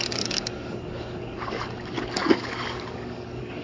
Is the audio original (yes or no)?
no